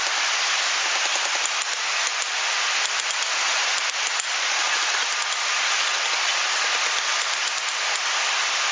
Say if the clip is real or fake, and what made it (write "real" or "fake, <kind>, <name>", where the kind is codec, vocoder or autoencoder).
real